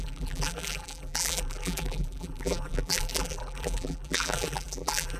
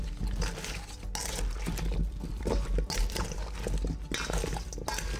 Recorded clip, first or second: second